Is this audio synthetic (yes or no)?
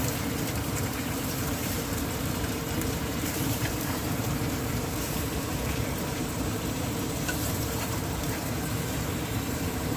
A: yes